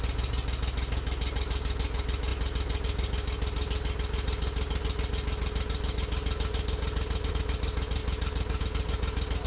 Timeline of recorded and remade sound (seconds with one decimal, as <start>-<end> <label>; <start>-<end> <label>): 0.0-9.5 recorded